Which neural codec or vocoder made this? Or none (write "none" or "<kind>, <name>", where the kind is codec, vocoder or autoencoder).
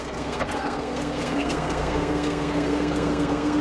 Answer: codec, SNAC